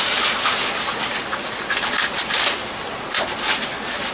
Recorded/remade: recorded